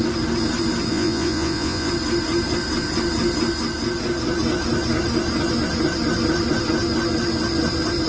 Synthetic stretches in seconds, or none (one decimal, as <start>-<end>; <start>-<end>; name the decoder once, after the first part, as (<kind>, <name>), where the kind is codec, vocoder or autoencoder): 0.9-1.9 (vocoder, Vocos)